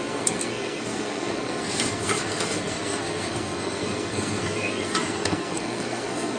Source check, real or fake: fake